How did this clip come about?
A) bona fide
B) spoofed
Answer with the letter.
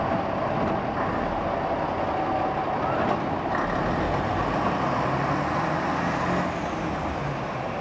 A